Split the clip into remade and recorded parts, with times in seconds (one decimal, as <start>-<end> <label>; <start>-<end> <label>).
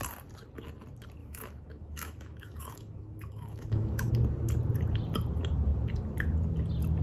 0.0-1.2 recorded; 1.2-4.1 remade; 4.1-7.0 recorded